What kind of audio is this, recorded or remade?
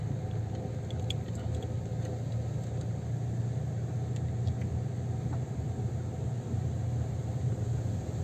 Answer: recorded